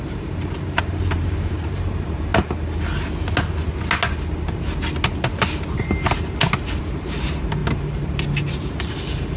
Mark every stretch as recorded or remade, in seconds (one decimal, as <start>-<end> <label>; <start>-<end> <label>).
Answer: 0.0-2.3 remade; 2.3-6.8 recorded; 6.8-7.6 remade; 7.6-8.5 recorded; 8.5-9.4 remade